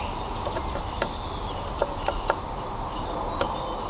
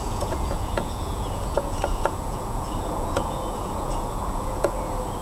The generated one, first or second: second